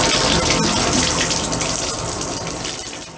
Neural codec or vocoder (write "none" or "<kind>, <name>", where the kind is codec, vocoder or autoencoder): none